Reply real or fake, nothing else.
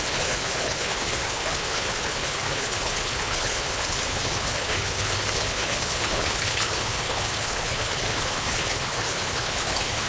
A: fake